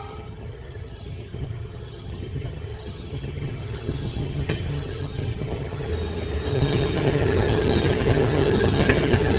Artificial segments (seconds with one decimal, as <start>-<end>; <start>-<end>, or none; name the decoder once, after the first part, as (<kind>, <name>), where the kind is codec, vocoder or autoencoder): 0.0-5.9 (vocoder, HiFi-GAN); 6.5-9.4